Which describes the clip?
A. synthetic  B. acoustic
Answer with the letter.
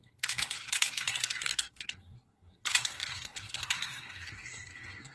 A